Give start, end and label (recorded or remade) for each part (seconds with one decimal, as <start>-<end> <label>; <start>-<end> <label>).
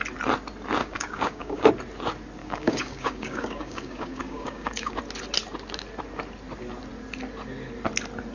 0.0-0.8 recorded; 0.8-1.7 remade; 1.7-2.4 recorded; 2.4-5.0 remade; 5.0-8.3 recorded